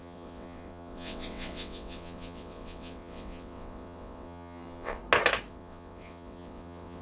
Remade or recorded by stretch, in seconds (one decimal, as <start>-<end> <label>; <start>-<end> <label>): 0.0-5.0 remade; 5.0-5.5 recorded; 5.5-7.0 remade